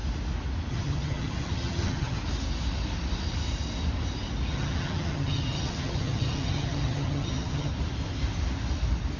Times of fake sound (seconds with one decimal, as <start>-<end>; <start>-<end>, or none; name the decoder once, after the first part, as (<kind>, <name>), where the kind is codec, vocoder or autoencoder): 0.7-2.2 (vocoder, HiFi-GAN); 4.5-7.7